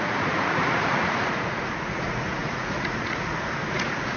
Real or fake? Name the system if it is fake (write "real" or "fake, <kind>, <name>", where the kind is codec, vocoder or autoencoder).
fake, vocoder, Vocos